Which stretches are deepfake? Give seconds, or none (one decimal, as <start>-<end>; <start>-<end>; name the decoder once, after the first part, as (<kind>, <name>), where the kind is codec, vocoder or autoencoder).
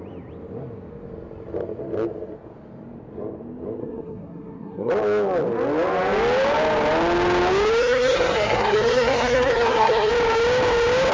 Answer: 3.8-4.9 (codec, SNAC); 7.8-10.1